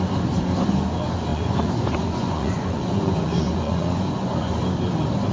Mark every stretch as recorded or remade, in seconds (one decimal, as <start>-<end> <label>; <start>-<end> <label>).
0.0-1.3 recorded; 1.3-4.5 remade; 4.5-5.3 recorded